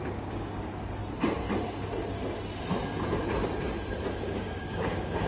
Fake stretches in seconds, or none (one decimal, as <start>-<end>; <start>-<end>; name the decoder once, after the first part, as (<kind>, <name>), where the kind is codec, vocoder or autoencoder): 0.0-1.0 (codec, DAC); 4.2-5.3